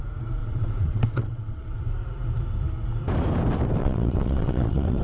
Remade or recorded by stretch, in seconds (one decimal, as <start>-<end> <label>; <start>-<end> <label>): 0.0-0.4 recorded; 0.4-1.8 remade; 1.8-3.8 recorded; 3.8-5.0 remade